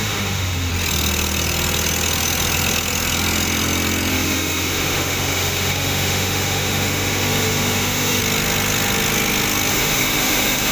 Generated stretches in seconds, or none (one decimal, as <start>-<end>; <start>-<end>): 0.0-0.7; 4.1-8.2; 9.7-10.7